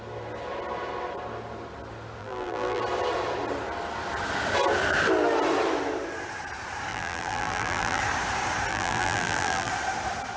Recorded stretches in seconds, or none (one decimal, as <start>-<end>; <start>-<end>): 0.0-2.2; 2.8-6.9; 8.0-8.7; 9.7-10.4